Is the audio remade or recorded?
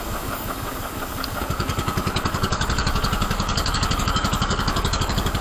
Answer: remade